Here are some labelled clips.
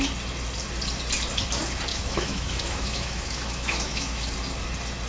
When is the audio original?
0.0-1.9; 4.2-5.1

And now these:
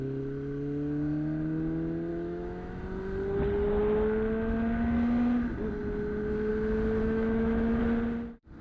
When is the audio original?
0.0-2.1; 2.8-7.0; 7.8-8.6

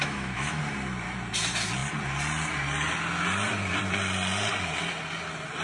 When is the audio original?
0.6-5.6

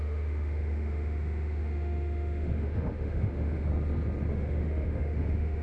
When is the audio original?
3.7-4.3

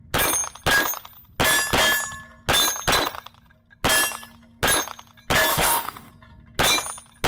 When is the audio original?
0.0-5.5; 6.1-7.3

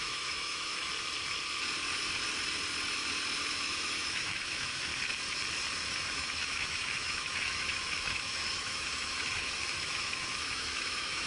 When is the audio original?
0.9-3.5; 4.9-5.9